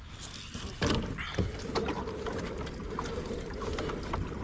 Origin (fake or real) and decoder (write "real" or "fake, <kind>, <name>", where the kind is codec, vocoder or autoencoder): real